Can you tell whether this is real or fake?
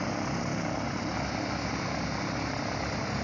real